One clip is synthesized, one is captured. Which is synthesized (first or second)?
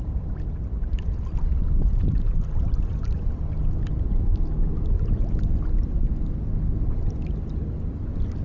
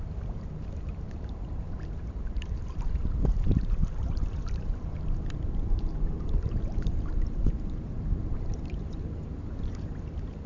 second